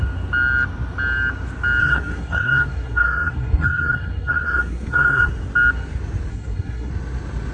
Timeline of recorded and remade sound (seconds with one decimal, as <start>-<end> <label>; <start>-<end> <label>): 0.0-1.8 recorded; 1.8-5.3 remade; 5.3-6.3 recorded; 6.3-6.9 remade; 6.9-7.5 recorded